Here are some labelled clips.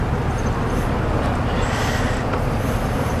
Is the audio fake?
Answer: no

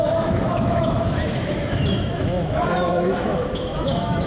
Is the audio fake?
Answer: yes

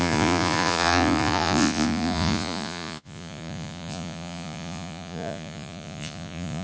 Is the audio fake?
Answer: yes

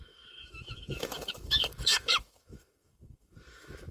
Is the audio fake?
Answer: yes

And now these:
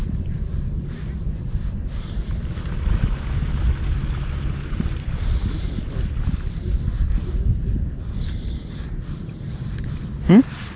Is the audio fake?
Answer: yes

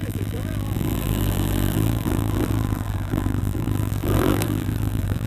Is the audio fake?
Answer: yes